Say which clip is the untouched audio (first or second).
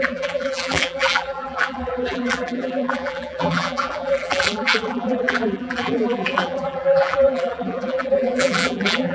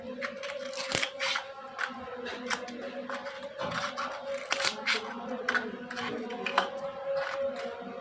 second